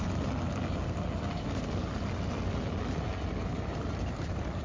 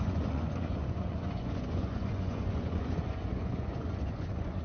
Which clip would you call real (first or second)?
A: first